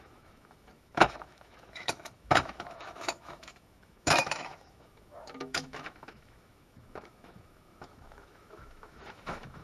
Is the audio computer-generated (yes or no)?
yes